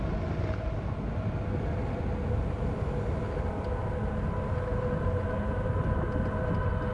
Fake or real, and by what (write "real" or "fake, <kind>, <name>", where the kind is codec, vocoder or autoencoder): real